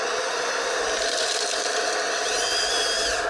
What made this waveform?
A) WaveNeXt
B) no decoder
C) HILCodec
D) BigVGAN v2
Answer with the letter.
B